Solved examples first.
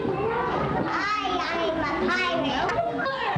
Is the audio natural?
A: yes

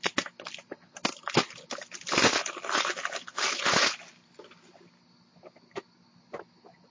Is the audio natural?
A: yes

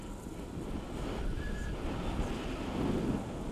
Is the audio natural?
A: yes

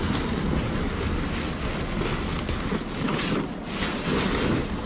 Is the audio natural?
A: yes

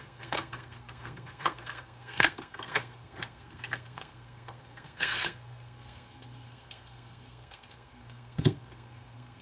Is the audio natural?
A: no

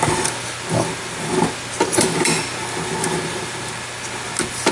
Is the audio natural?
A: yes